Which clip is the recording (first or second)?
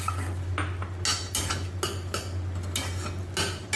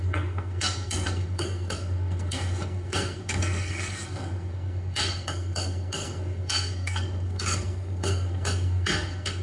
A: first